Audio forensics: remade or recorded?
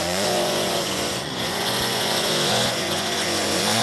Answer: remade